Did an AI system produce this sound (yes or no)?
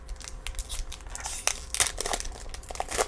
no